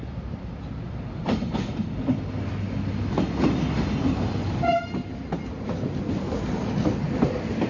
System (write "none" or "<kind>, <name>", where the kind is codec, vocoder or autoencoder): none